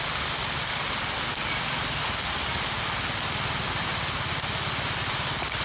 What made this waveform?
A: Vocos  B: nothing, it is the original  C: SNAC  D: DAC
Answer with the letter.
B